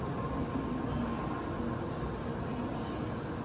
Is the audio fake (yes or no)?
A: no